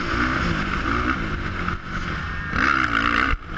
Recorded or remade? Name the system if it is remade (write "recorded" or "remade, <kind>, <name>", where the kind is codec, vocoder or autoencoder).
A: recorded